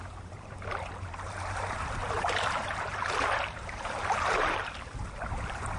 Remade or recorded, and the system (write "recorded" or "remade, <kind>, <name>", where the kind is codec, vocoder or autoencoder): remade, vocoder, BigVGAN v2